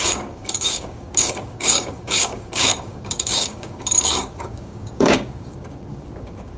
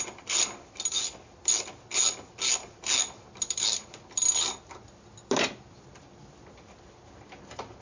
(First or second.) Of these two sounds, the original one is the second